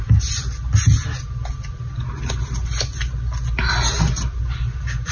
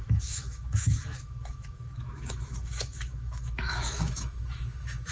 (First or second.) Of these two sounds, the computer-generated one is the second